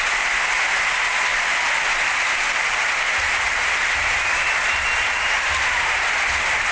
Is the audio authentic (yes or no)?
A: yes